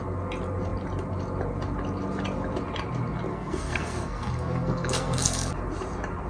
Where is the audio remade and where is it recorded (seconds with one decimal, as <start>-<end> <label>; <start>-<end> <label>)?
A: 0.0-3.3 recorded; 3.3-5.5 remade; 5.5-6.3 recorded